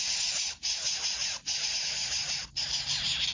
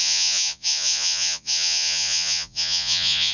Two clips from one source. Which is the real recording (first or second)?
first